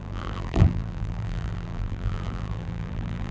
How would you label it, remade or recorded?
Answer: remade